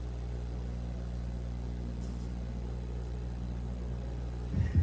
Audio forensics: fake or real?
real